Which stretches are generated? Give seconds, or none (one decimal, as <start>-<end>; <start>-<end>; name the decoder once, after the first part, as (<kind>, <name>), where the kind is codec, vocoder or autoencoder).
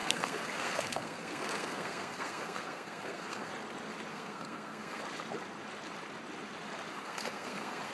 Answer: 0.0-3.5 (codec, SNAC); 4.1-5.0; 6.9-7.9